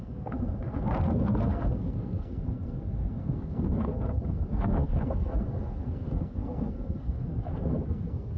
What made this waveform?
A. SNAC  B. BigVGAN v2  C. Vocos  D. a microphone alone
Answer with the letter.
A